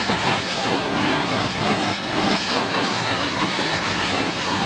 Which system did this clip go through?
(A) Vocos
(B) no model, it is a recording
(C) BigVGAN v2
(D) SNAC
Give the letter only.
D